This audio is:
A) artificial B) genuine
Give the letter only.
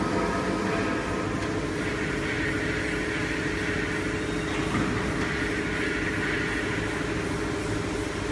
B